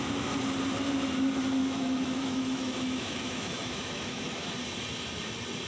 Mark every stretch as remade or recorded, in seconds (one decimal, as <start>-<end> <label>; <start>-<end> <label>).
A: 0.0-1.6 recorded; 1.6-4.5 remade; 4.5-5.7 recorded